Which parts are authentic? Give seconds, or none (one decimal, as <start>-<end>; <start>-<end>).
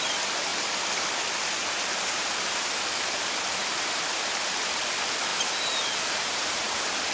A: 0.0-3.6; 4.8-5.3